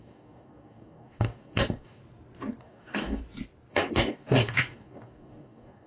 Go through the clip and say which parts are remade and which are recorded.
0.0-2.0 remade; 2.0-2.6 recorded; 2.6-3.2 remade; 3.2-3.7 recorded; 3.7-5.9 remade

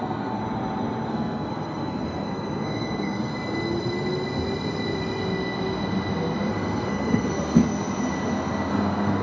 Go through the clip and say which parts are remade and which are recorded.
0.0-0.4 remade; 0.4-1.1 recorded; 1.1-3.3 remade; 3.3-6.5 recorded; 6.5-7.6 remade; 7.6-8.7 recorded; 8.7-9.2 remade

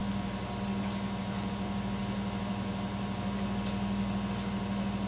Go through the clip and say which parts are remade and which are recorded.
0.0-5.1 recorded